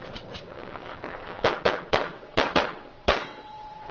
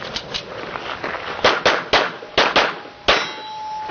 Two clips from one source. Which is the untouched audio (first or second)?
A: second